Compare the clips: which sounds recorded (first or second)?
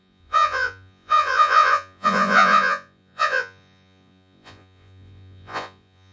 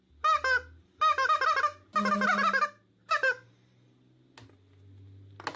second